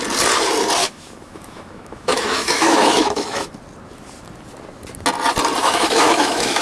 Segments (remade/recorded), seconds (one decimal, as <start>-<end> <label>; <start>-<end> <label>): 0.0-0.8 recorded; 0.8-3.5 remade; 3.5-5.6 recorded; 5.6-6.6 remade